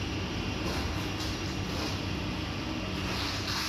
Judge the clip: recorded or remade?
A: recorded